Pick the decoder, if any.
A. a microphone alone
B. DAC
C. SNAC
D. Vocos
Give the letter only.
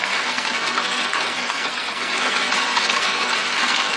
C